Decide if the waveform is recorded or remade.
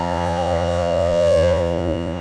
remade